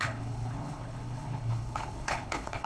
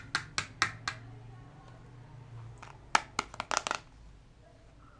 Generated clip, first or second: first